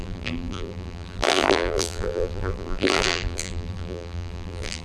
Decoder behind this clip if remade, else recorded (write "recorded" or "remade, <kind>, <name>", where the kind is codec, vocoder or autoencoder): remade, vocoder, BigVGAN v2